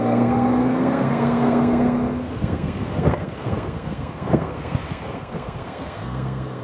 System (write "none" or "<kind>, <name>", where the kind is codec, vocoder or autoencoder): codec, SNAC